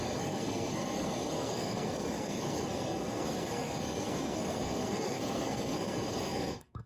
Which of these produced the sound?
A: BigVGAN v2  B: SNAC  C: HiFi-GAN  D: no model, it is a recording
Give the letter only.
B